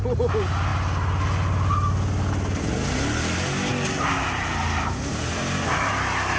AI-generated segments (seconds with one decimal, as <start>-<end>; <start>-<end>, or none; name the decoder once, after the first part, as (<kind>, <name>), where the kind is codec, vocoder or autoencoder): none